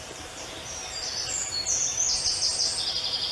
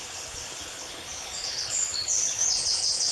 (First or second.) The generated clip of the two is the second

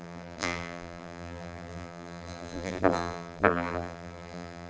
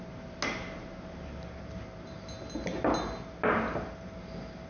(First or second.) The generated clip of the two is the first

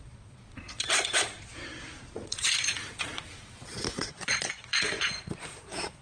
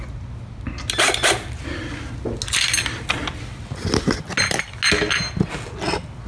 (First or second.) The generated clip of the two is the first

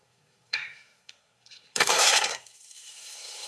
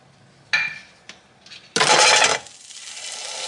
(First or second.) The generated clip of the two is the first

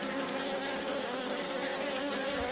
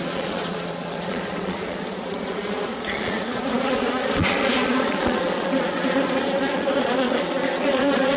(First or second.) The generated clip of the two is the second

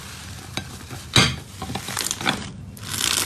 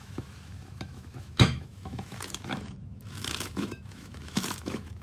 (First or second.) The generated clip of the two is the second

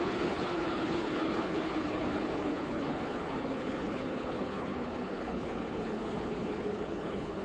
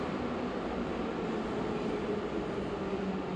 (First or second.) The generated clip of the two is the first